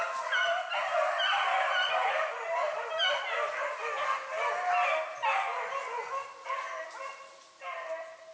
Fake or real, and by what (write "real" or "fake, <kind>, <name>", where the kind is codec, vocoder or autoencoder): real